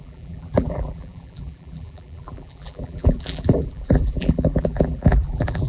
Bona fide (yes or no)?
no